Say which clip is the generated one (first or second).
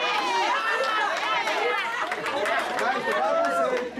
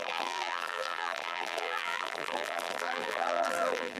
second